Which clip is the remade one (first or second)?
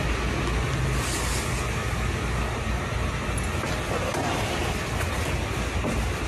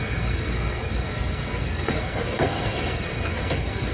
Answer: second